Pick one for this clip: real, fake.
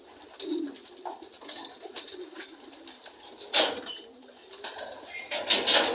real